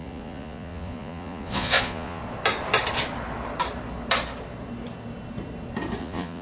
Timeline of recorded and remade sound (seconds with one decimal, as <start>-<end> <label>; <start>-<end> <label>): 0.0-2.2 remade; 2.2-6.0 recorded; 6.0-6.4 remade